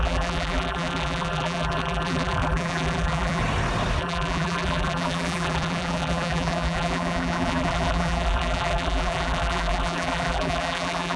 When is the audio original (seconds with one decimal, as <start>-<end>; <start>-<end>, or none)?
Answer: 3.4-4.0